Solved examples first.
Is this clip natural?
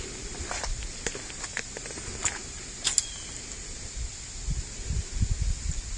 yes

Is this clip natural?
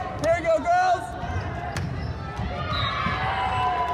yes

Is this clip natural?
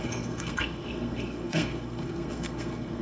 no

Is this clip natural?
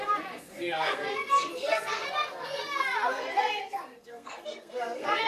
no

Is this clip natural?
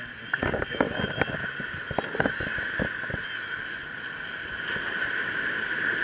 yes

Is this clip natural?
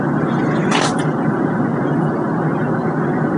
yes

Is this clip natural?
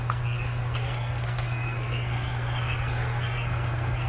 no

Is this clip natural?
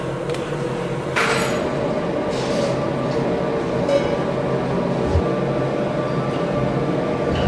yes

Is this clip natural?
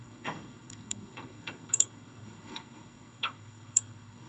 no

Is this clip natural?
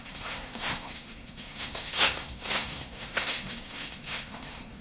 no